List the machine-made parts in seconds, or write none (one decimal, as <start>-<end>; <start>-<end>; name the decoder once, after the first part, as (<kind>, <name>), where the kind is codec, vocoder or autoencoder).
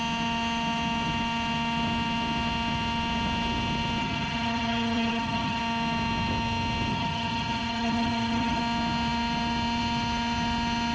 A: 4.0-5.6 (vocoder, HiFi-GAN); 6.9-8.6